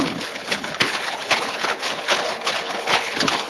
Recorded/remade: remade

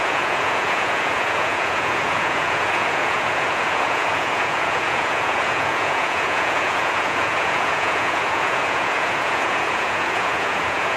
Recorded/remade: remade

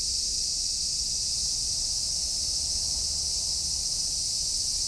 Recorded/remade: recorded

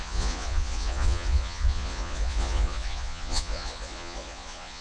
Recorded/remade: remade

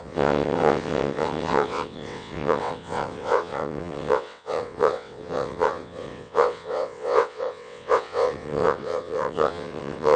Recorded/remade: remade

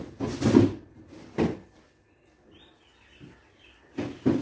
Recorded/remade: recorded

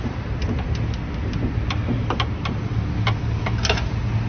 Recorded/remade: recorded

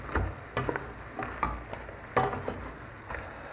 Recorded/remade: recorded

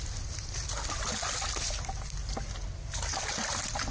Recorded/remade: recorded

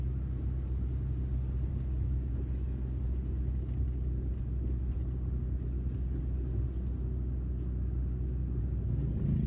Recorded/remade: recorded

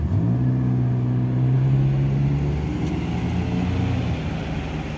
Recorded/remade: recorded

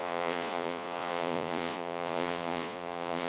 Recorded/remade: remade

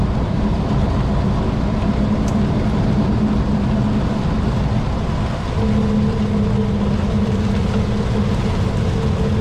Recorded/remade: recorded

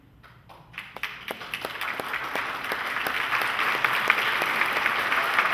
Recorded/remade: recorded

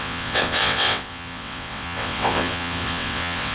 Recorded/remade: remade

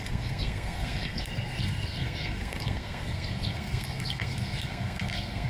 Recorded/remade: remade